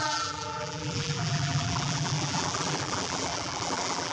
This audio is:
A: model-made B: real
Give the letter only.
A